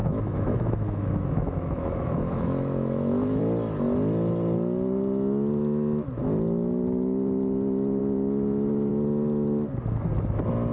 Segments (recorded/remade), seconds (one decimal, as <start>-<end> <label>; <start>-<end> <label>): 0.0-3.4 remade; 3.4-10.7 recorded